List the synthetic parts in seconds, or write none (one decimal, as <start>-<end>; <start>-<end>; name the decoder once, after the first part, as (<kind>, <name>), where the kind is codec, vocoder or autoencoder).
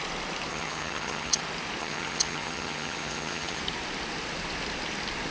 0.5-1.4 (vocoder, HiFi-GAN); 1.8-3.6